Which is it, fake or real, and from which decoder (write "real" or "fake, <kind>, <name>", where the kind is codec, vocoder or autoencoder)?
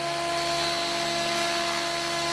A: real